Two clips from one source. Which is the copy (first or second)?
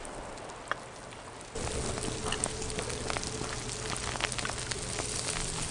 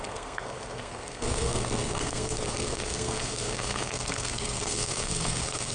second